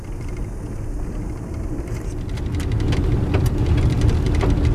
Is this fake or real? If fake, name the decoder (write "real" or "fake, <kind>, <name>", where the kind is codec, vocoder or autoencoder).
real